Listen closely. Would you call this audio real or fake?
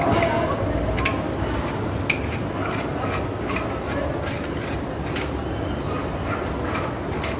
real